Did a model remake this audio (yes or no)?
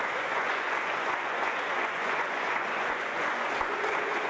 yes